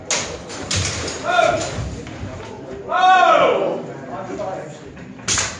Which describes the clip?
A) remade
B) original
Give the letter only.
B